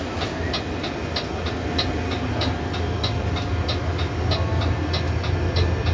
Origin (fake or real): real